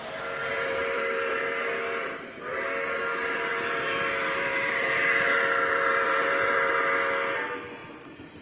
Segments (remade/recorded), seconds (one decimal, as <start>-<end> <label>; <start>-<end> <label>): 0.0-0.4 recorded; 0.4-1.4 remade; 1.4-3.5 recorded; 3.5-6.8 remade; 6.8-7.8 recorded; 7.8-8.4 remade